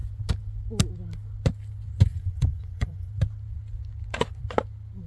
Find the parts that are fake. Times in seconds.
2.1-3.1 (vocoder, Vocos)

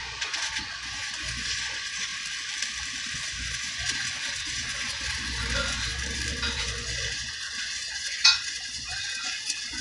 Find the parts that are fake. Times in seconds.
0.0-2.1 (vocoder, Vocos); 3.1-5.9; 6.6-9.8